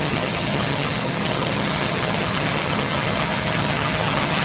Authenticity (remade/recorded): remade